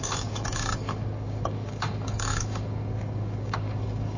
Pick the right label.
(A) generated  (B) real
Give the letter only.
A